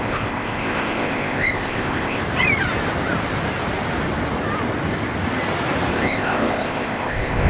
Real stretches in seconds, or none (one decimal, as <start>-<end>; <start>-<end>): 2.2-5.9